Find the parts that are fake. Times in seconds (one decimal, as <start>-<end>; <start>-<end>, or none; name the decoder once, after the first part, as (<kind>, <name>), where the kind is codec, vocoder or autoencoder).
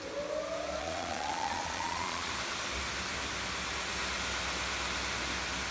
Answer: 0.8-2.3 (vocoder, Vocos)